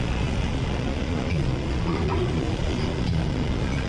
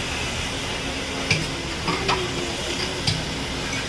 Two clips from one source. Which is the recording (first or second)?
second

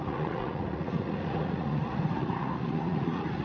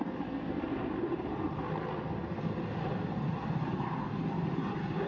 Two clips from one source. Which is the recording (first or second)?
second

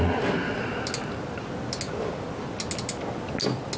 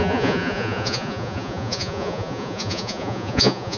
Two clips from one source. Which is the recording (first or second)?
first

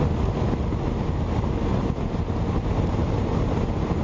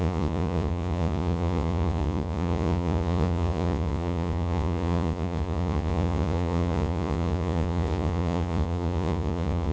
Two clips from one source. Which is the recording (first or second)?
first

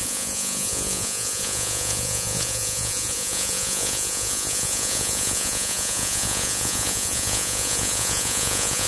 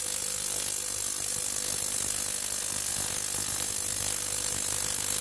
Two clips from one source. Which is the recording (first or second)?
second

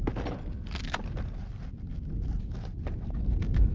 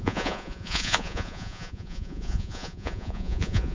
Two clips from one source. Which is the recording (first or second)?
first